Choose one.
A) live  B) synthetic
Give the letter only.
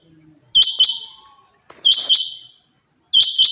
A